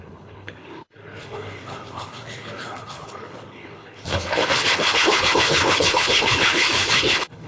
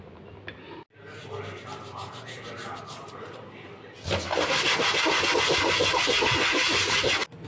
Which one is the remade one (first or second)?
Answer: first